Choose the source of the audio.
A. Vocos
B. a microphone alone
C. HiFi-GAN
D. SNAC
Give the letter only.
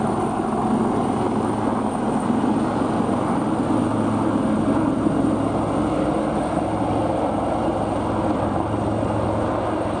B